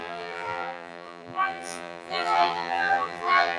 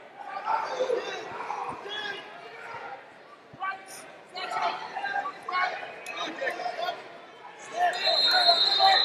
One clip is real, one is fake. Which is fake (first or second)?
first